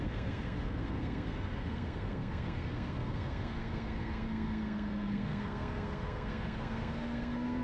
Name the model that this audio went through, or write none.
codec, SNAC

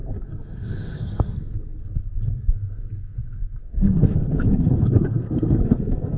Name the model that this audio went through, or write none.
codec, SNAC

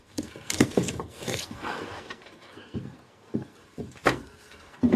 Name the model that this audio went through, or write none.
codec, SNAC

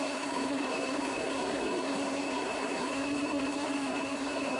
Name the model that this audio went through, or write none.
codec, SNAC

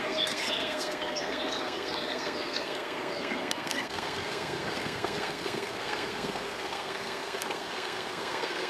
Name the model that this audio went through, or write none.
codec, SNAC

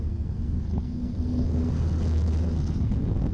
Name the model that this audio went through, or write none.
codec, SNAC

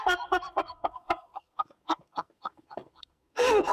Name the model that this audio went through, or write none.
codec, SNAC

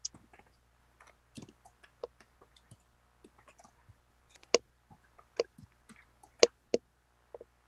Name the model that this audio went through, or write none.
none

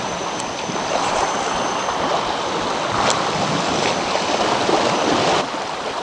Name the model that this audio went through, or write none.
none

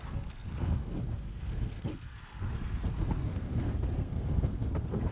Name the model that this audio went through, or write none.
codec, SNAC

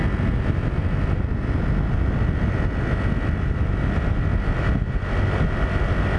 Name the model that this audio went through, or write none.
none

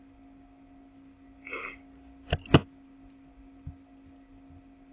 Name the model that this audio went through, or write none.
none